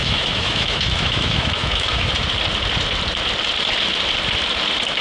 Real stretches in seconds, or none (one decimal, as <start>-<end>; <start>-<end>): 2.1-5.0